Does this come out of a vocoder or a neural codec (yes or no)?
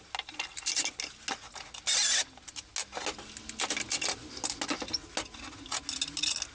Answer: no